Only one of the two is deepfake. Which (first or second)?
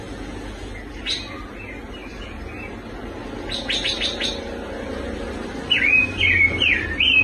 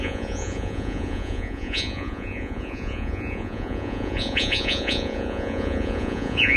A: second